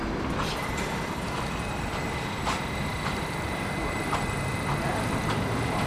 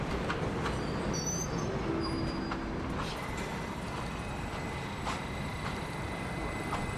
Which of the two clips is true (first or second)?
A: second